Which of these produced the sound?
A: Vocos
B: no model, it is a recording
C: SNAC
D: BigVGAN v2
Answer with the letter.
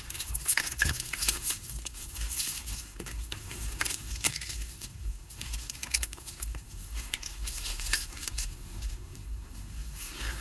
C